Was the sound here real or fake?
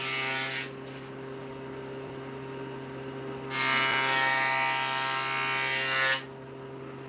real